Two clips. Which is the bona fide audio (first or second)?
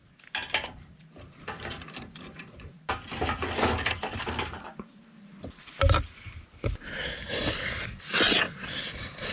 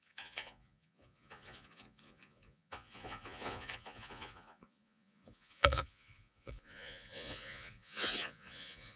first